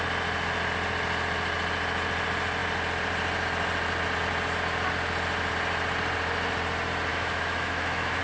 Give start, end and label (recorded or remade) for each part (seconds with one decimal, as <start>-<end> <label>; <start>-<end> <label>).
0.0-7.1 recorded; 7.1-8.2 remade